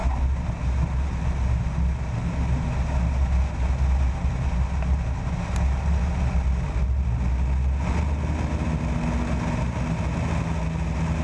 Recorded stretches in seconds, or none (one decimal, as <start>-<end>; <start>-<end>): 0.0-11.2

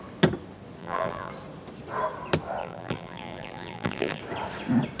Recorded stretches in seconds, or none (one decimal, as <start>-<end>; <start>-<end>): 0.0-0.8; 1.3-2.6; 4.2-5.0

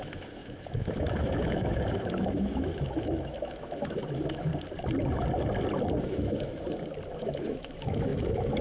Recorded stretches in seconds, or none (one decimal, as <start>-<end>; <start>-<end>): 4.5-6.0; 6.5-7.2

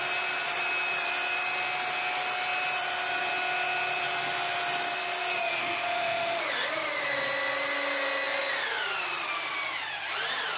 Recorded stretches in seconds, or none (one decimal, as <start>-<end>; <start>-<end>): 0.0-5.6; 6.4-10.6

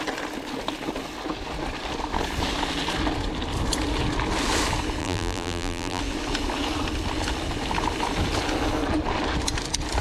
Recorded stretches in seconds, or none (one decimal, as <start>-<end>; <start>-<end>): 0.0-5.0; 6.0-10.0

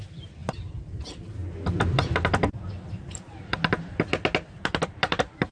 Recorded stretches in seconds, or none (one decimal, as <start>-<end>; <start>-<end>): 0.0-0.4; 1.0-5.5

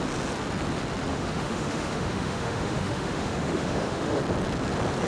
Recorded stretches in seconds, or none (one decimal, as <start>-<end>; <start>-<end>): 0.0-1.1; 4.2-5.1

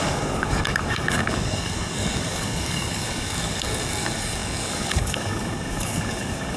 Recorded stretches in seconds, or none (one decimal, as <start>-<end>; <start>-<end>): none